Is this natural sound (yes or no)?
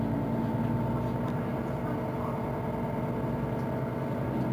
yes